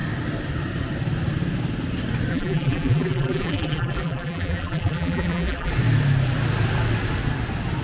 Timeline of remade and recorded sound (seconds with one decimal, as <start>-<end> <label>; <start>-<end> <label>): 0.0-2.3 recorded; 2.3-5.7 remade; 5.7-7.8 recorded